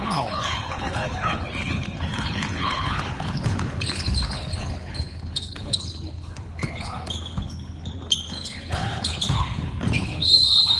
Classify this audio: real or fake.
fake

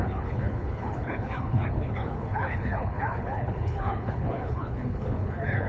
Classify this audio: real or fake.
fake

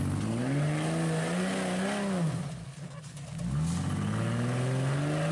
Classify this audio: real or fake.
real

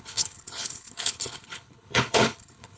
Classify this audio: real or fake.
fake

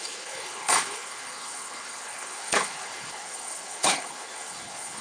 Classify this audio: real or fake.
fake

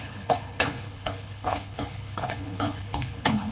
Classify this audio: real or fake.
fake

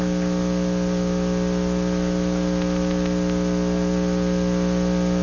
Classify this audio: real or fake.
real